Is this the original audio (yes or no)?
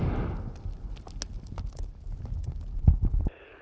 yes